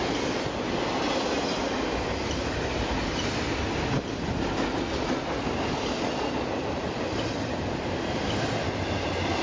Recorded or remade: recorded